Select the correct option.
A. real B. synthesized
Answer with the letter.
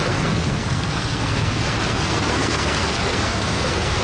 B